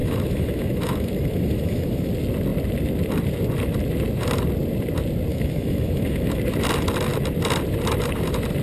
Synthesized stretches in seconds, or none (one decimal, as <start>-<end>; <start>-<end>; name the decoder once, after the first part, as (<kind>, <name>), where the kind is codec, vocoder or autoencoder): 0.0-2.1 (autoencoder, DAC-VAE); 5.3-6.4

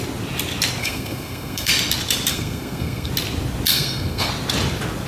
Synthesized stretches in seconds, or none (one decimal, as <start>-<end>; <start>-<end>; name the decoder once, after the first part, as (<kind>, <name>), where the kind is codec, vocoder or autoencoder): 0.8-1.7 (codec, SNAC); 2.3-3.1; 3.7-4.3

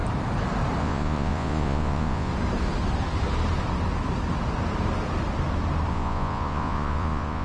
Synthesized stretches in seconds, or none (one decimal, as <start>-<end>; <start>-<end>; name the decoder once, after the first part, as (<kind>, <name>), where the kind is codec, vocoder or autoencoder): 0.8-2.3 (vocoder, Vocos); 5.9-7.4

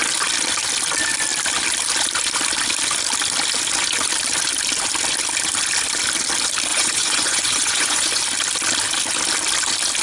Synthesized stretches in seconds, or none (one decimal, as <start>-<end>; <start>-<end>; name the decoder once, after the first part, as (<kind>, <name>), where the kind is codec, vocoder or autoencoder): 6.7-8.2 (vocoder, Vocos)

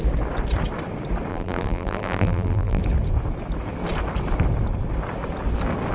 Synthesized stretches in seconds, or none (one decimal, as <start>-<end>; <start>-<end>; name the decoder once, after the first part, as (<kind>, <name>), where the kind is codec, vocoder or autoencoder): 1.3-2.8 (vocoder, BigVGAN v2)

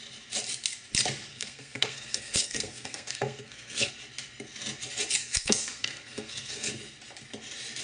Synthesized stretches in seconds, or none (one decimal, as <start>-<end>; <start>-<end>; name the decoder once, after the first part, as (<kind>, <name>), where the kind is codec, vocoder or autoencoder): 1.3-3.9 (codec, SNAC); 5.2-6.7

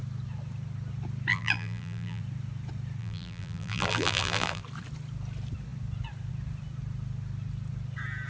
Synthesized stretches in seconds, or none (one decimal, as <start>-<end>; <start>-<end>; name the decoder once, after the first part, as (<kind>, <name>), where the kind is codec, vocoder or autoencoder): 1.3-2.2 (vocoder, BigVGAN v2); 3.0-4.6